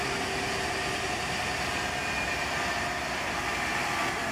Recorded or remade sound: recorded